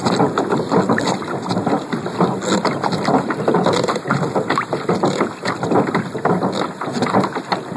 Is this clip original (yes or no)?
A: yes